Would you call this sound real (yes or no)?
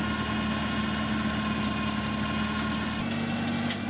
yes